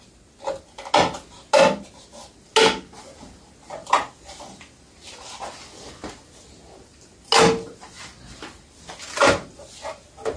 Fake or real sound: real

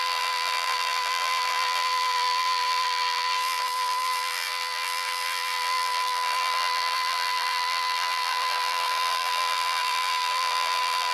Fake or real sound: fake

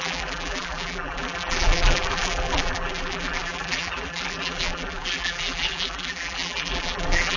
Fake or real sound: fake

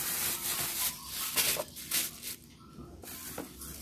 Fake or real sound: real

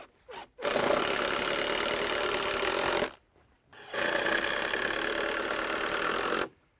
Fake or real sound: real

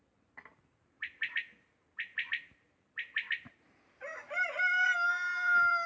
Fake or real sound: fake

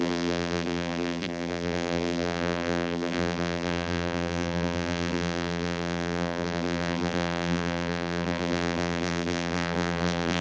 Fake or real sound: fake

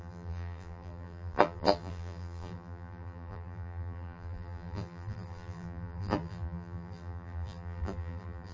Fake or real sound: fake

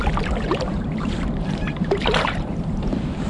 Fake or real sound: fake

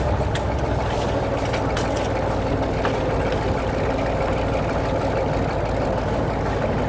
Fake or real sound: real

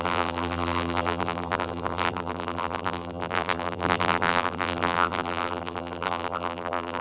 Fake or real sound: fake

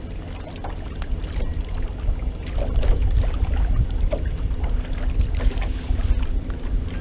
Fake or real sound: real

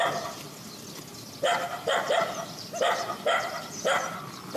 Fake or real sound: real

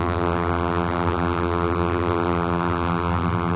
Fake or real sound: fake